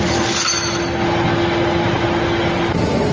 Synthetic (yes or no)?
no